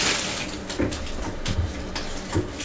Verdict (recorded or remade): recorded